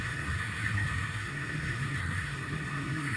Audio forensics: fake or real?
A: fake